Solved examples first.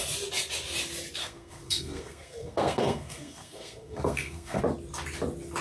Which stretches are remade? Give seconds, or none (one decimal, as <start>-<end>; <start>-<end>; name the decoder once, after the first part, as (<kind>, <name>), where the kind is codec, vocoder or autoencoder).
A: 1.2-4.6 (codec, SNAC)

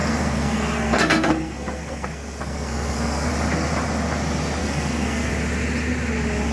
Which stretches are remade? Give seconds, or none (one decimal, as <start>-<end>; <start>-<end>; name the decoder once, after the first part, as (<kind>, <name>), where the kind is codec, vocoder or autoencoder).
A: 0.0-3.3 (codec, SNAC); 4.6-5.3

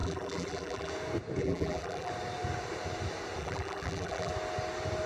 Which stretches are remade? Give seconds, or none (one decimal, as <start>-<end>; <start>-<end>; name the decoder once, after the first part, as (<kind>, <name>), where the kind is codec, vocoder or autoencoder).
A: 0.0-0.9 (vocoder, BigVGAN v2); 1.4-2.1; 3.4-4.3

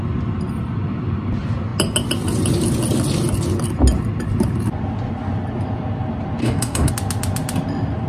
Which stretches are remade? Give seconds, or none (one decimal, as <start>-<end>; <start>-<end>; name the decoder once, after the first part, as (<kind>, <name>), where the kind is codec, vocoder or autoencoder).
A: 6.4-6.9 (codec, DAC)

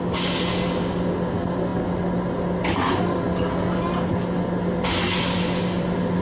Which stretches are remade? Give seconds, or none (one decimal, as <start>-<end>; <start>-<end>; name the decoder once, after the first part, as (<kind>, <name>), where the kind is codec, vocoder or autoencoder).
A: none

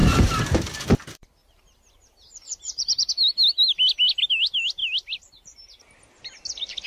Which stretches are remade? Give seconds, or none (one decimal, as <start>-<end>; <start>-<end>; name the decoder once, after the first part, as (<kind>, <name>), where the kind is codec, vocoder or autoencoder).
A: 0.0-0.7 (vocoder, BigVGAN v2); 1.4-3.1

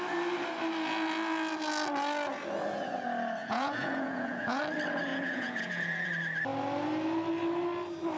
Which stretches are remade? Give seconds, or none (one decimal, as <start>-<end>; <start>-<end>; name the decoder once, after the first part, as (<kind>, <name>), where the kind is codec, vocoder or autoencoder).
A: 3.4-4.6 (vocoder, Vocos); 5.1-6.1

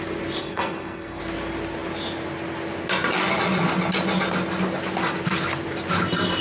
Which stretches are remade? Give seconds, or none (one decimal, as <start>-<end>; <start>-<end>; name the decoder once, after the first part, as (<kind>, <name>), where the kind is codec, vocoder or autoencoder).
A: 0.4-1.2 (codec, SNAC)